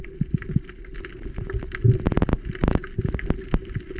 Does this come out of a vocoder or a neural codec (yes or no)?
no